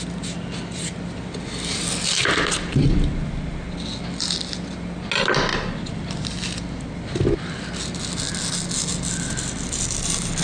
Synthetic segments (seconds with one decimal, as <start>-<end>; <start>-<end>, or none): 5.5-7.6; 8.9-10.0